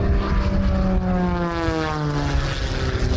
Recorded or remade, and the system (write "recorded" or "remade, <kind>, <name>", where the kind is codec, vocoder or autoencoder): recorded